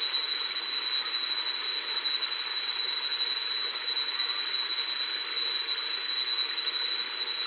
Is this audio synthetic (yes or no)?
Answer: no